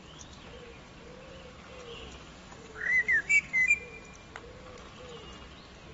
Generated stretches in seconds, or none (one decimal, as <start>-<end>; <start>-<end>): 1.9-3.7